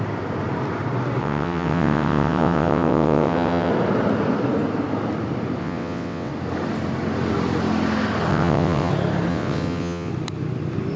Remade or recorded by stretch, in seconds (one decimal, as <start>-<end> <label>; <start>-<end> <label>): 0.0-1.2 recorded; 1.2-3.7 remade; 3.7-5.6 recorded; 5.6-6.3 remade; 6.3-8.3 recorded; 8.3-8.9 remade; 8.9-9.3 recorded; 9.3-10.1 remade; 10.1-11.0 recorded